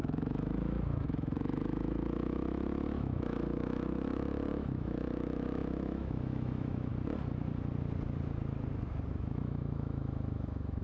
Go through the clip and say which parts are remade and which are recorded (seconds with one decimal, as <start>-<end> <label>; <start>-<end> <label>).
0.0-6.9 remade; 6.9-9.1 recorded; 9.1-10.8 remade